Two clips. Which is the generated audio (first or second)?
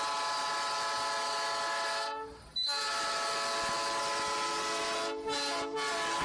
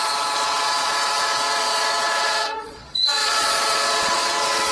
second